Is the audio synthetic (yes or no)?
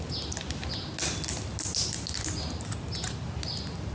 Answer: no